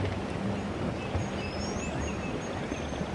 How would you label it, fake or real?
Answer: real